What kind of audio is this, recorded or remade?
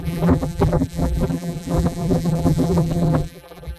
remade